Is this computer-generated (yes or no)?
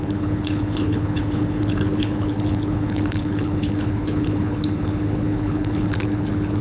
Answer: yes